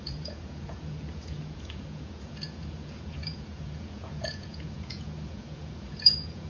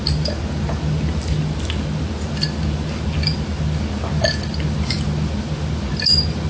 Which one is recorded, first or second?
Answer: second